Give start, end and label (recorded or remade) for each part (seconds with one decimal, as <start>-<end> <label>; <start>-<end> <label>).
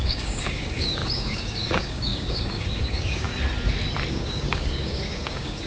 0.0-3.3 remade; 3.3-4.1 recorded; 4.1-5.7 remade